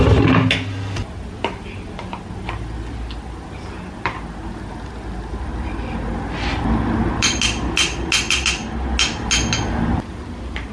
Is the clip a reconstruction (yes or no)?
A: no